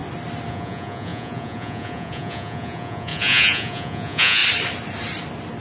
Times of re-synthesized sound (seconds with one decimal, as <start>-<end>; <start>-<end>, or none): 0.5-4.4